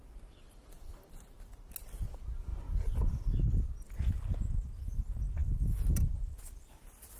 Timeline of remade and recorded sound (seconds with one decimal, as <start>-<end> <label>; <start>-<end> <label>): 0.0-7.2 recorded